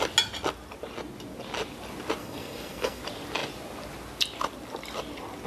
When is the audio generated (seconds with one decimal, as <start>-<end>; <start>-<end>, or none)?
2.2-3.0